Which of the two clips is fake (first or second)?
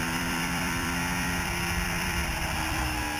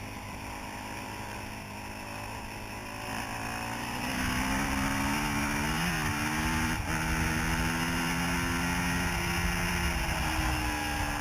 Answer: first